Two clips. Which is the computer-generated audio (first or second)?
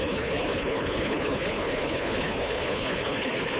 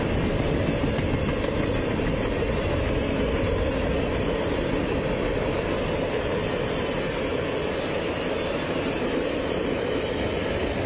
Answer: first